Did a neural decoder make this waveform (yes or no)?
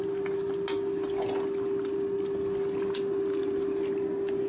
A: no